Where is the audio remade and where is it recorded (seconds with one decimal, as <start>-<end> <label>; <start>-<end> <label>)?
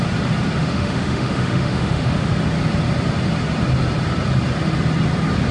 0.0-0.6 recorded; 0.6-2.3 remade; 2.3-5.5 recorded